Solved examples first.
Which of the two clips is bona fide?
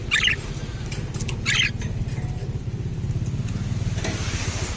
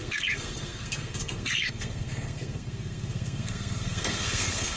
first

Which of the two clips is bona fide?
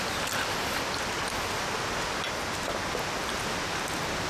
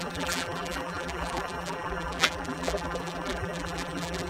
first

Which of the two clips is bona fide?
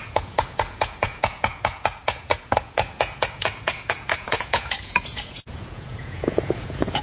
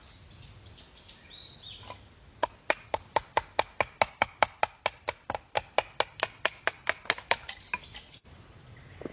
second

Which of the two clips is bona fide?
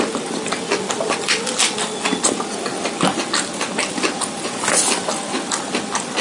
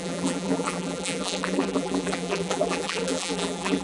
first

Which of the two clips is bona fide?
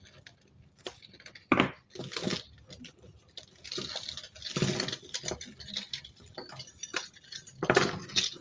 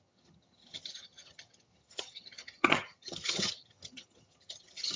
first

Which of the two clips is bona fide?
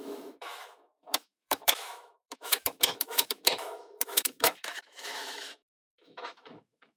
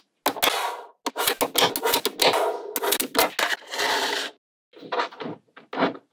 second